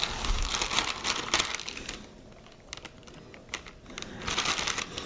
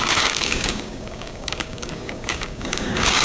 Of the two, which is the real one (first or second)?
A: first